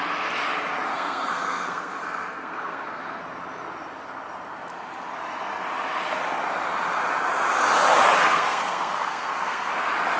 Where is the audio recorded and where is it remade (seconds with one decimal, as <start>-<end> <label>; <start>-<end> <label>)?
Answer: 0.0-0.9 recorded; 0.9-3.2 remade; 3.2-8.2 recorded; 8.2-9.7 remade; 9.7-10.2 recorded